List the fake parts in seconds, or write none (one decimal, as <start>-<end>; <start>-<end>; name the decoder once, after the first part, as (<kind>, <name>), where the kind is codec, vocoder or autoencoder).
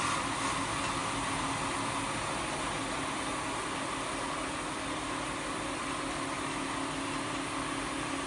none